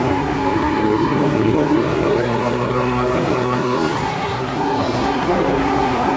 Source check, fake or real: fake